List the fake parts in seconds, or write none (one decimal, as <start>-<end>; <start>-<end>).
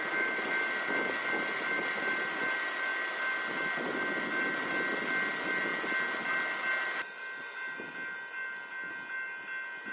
none